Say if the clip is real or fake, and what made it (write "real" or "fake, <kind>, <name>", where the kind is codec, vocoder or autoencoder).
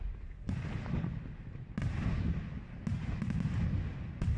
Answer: real